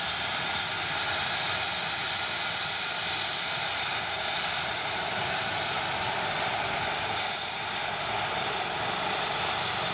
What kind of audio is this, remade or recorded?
recorded